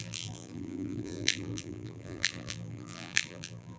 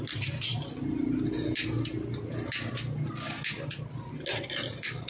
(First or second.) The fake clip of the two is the first